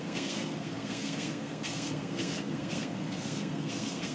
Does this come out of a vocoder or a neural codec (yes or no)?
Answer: yes